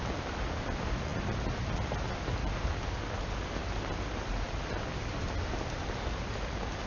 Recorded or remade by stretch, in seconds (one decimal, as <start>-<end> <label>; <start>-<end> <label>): 0.0-3.6 recorded; 3.6-5.2 remade; 5.2-6.9 recorded